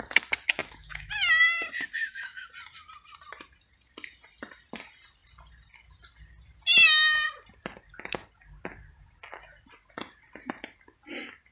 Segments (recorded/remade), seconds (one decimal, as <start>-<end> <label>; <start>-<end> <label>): 0.0-0.6 recorded; 0.6-1.1 remade; 1.1-2.0 recorded; 2.0-2.5 remade; 2.5-11.5 recorded